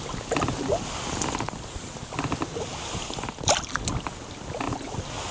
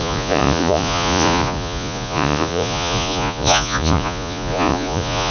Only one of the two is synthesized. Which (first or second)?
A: second